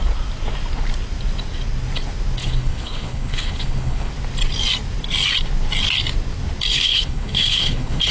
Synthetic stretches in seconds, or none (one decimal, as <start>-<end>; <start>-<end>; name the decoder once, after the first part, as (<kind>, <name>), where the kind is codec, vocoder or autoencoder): 2.4-4.1 (codec, HILCodec); 6.7-8.1